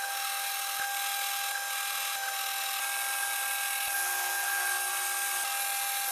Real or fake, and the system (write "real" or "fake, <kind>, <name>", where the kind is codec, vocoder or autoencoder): real